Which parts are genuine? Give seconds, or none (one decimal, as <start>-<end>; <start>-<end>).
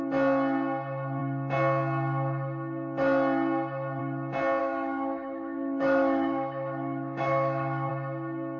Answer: 0.0-4.6; 7.9-8.6